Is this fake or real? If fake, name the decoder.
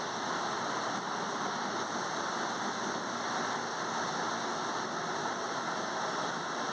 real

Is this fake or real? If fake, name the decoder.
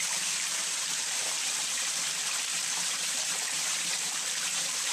fake, vocoder, BigVGAN v2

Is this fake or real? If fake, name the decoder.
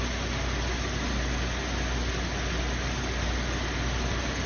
real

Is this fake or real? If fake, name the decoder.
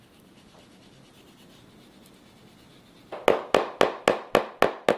real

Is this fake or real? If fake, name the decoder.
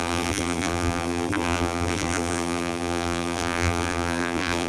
fake, vocoder, BigVGAN v2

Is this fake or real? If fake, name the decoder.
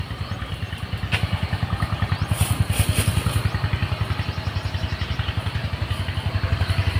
real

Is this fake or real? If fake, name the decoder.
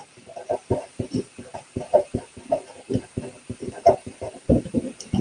fake, vocoder, BigVGAN v2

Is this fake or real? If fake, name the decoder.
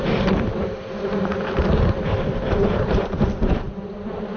fake, vocoder, BigVGAN v2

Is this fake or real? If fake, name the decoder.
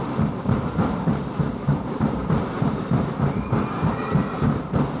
fake, vocoder, BigVGAN v2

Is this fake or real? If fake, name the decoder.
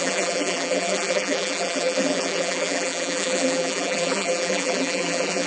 fake, vocoder, BigVGAN v2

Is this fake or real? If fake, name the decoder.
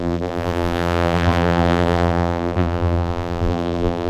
fake, vocoder, BigVGAN v2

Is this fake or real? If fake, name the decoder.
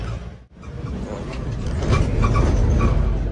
real